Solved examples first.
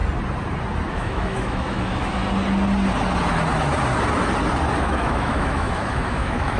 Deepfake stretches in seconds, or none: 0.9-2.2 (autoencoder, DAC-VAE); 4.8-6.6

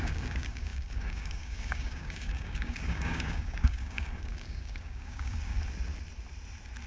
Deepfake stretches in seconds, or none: 0.0-5.6 (codec, DAC)